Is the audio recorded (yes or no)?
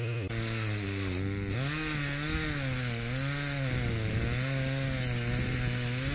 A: yes